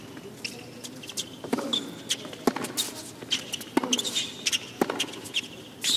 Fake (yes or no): no